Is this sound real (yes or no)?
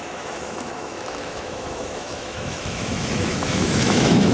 no